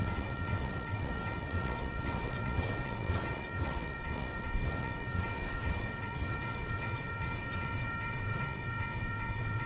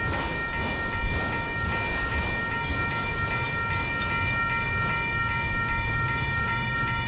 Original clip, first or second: second